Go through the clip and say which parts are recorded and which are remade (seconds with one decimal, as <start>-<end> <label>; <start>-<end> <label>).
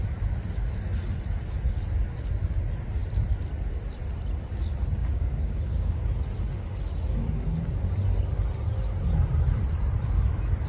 0.0-5.0 recorded; 5.0-6.0 remade; 6.0-10.7 recorded